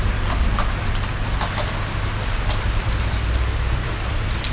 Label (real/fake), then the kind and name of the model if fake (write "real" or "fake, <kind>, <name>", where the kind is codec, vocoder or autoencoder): real